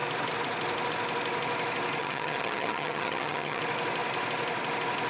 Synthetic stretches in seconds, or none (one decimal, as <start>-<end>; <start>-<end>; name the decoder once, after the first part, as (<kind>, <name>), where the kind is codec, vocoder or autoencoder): 2.0-3.6 (vocoder, HiFi-GAN)